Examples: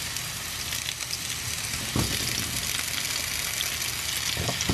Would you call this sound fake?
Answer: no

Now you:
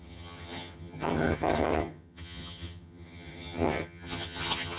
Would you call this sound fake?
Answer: yes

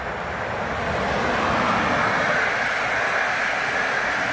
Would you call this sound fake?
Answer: no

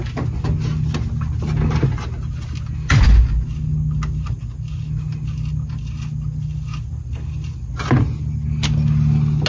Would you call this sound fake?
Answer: no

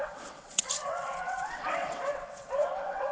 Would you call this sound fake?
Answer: yes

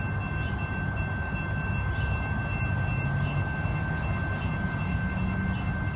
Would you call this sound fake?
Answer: no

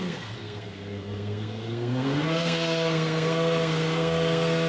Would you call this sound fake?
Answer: yes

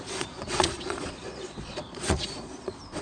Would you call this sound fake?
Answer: yes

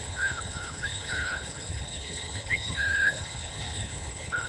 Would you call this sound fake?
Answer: yes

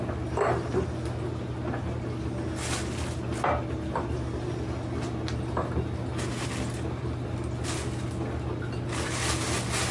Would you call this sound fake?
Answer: no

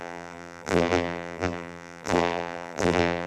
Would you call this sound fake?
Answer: yes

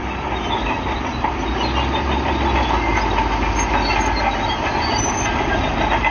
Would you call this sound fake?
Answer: no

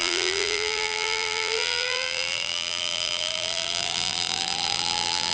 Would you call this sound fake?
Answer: yes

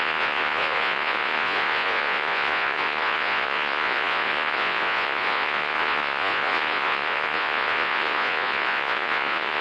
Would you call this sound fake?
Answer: yes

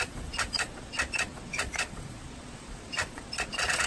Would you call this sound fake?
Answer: yes